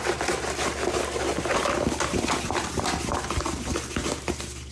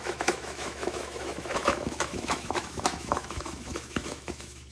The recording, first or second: first